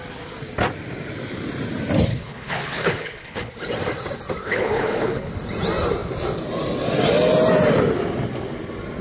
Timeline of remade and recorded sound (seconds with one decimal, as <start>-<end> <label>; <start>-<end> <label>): 0.0-2.1 recorded; 2.1-3.5 remade; 3.5-4.4 recorded; 4.4-5.3 remade; 5.3-9.0 recorded